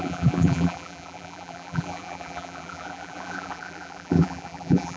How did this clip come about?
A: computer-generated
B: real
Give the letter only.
A